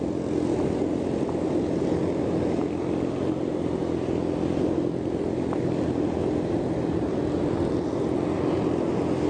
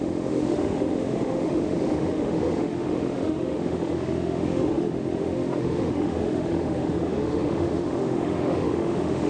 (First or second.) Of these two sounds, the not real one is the second